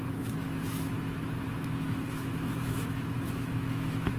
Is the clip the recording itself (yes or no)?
no